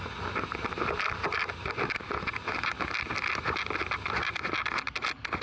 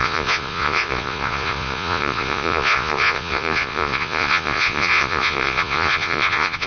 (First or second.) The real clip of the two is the first